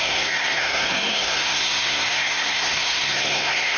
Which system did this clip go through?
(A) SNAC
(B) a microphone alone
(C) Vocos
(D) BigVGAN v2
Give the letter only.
A